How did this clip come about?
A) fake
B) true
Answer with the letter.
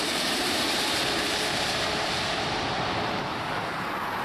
A